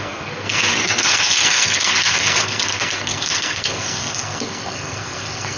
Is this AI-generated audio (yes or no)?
yes